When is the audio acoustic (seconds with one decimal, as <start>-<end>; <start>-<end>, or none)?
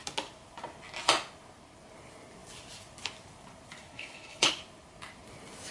0.0-3.9; 4.5-5.7